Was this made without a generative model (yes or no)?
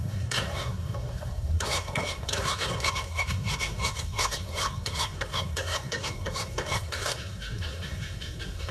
no